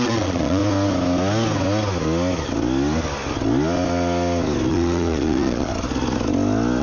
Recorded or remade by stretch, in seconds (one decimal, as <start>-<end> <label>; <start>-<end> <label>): 0.0-0.6 remade; 0.6-4.7 recorded; 4.7-5.7 remade; 5.7-6.8 recorded